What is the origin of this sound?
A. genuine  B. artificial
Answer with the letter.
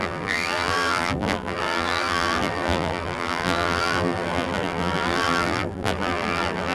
B